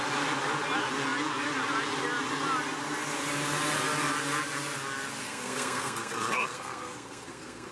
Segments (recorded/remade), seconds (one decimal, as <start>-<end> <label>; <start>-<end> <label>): 0.0-5.2 recorded; 5.2-7.7 remade